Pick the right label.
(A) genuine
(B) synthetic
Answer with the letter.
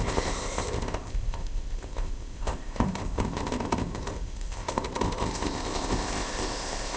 B